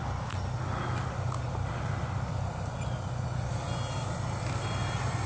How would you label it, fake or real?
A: real